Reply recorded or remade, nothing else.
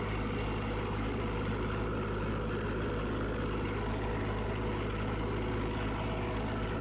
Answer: recorded